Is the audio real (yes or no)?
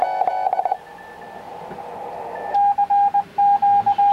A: yes